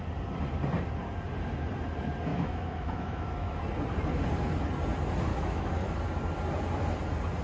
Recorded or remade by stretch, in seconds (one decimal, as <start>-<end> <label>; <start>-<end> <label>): 0.0-2.3 recorded; 2.3-3.6 remade; 3.6-5.3 recorded; 5.3-6.0 remade; 6.0-7.4 recorded